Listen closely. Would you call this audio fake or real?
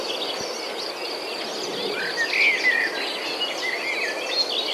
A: real